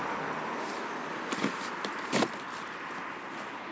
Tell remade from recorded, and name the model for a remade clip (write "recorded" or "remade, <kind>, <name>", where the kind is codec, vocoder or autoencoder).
recorded